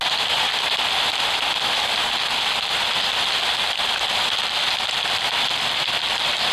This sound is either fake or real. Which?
real